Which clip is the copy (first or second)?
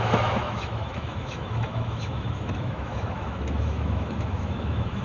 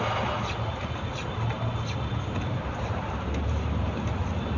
first